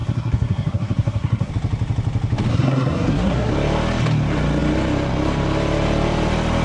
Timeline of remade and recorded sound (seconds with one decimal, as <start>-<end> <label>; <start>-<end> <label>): 0.0-1.5 remade; 1.5-2.5 recorded; 2.5-3.5 remade; 3.5-6.6 recorded